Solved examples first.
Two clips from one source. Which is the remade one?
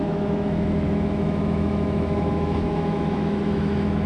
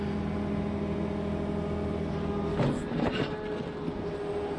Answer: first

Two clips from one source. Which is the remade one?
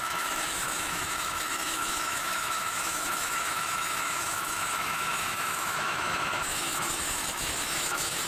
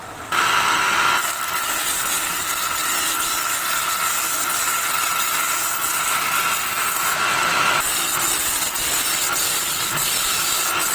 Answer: first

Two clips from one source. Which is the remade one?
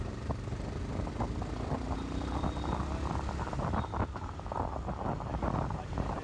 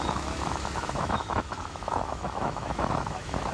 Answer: second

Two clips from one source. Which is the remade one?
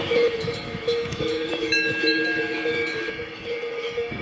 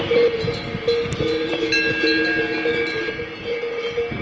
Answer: first